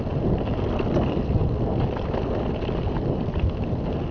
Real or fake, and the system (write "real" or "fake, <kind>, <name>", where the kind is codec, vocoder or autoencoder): real